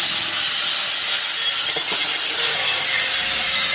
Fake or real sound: real